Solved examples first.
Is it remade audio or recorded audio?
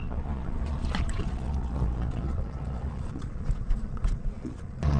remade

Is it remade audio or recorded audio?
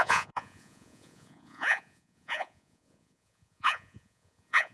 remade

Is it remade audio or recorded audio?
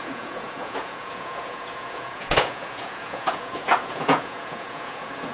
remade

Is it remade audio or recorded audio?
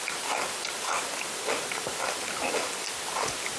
recorded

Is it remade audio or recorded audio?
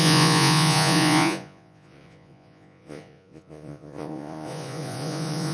remade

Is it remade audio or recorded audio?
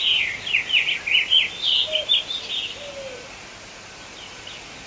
recorded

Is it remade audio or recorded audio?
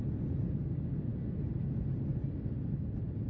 recorded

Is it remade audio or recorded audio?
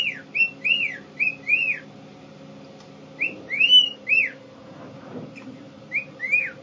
recorded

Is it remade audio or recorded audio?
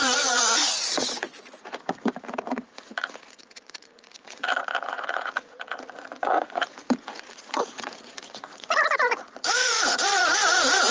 remade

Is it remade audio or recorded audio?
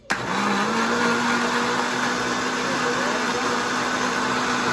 recorded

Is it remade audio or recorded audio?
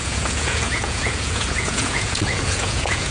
remade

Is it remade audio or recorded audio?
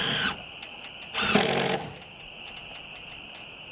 recorded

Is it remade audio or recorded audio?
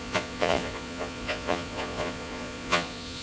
remade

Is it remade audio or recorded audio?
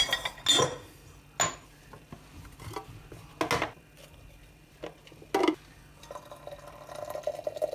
recorded